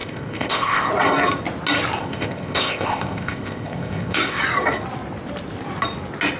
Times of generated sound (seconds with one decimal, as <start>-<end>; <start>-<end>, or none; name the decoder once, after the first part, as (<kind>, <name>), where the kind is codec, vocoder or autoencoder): 0.0-0.9 (codec, ZipCodec); 2.0-4.4